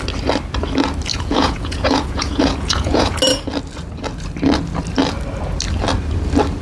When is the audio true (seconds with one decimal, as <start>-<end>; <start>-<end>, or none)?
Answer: 0.0-1.1; 3.2-6.6